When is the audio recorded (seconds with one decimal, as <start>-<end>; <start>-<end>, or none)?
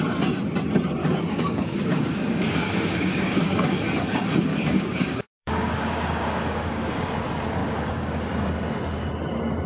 0.0-1.0; 3.8-4.5; 6.9-7.6; 8.2-9.7